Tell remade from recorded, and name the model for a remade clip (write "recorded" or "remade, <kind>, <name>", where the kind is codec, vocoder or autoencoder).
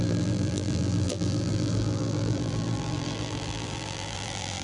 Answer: remade, vocoder, BigVGAN v2